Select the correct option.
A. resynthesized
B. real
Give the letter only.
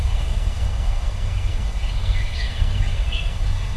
A